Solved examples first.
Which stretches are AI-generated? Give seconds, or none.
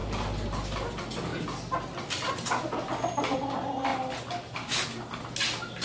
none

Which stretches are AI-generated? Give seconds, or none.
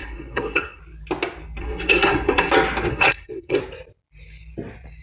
0.0-0.8 (codec, SNAC); 1.6-2.5; 2.9-3.6